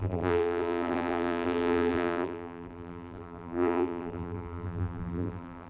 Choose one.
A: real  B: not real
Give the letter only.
B